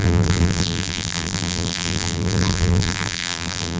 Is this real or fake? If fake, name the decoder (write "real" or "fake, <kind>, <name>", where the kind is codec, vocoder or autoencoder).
fake, vocoder, BigVGAN v2